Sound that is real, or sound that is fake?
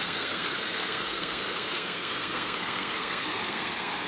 fake